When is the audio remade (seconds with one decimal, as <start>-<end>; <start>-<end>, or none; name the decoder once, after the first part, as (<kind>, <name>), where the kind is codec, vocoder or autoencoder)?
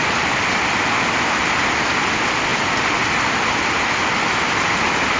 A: none